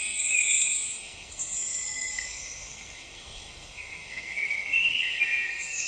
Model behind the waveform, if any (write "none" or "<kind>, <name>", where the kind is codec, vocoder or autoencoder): codec, SNAC